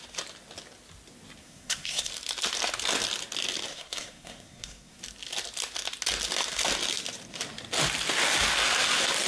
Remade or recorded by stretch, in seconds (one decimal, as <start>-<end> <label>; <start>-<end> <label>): 0.0-1.4 recorded; 1.4-2.1 remade; 2.1-3.7 recorded; 3.7-5.0 remade; 5.0-9.3 recorded